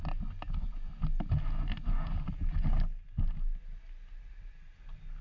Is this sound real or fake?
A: real